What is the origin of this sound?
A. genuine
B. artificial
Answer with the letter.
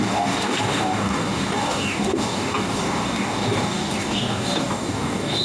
B